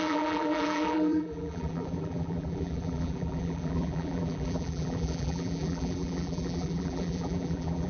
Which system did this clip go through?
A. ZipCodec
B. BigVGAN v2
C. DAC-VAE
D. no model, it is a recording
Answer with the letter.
B